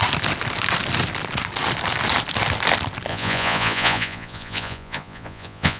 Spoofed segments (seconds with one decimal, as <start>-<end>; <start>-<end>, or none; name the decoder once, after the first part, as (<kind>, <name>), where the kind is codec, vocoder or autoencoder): 3.1-5.8 (vocoder, Vocos)